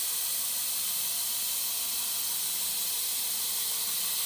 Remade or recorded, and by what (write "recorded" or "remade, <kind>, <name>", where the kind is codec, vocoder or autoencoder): recorded